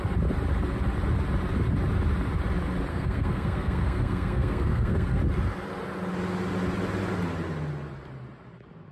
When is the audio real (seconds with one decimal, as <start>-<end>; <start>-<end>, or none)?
0.0-2.9; 5.2-8.9

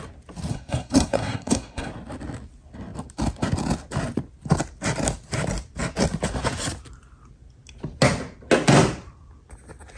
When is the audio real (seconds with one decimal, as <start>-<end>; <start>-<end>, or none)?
0.0-0.5; 1.9-10.0